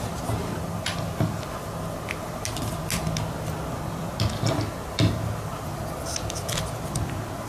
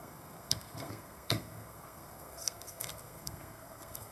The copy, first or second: second